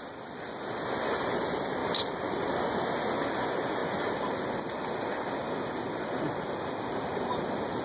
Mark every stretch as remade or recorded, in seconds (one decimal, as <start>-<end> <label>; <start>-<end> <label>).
0.0-7.8 recorded